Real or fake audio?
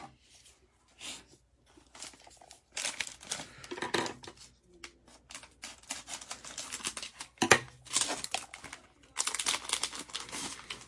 real